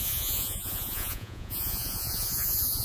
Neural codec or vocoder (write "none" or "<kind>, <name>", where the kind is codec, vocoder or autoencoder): vocoder, Vocos